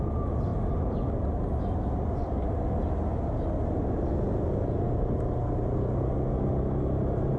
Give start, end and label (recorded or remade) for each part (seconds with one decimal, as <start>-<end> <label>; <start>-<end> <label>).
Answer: 0.0-7.4 recorded

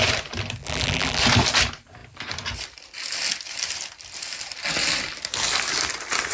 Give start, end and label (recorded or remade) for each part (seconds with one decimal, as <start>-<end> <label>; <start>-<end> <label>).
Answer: 0.0-0.6 recorded; 0.6-1.2 remade; 1.2-6.3 recorded